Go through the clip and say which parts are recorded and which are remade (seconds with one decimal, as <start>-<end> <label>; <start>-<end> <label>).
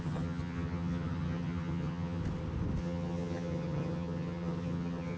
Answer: 0.0-2.2 remade; 2.2-2.8 recorded; 2.8-5.2 remade